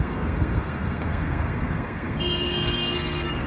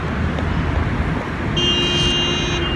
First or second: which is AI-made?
first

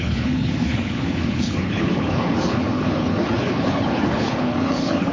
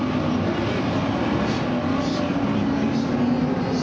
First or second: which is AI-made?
first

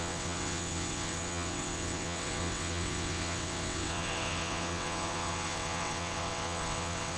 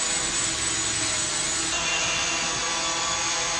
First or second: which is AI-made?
first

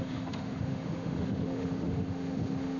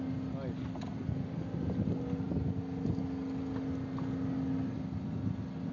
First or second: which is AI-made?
first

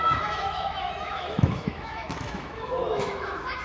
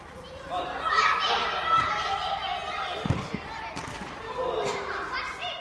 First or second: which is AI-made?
first